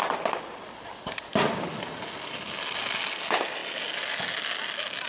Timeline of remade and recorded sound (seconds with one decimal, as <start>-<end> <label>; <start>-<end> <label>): 0.0-5.1 recorded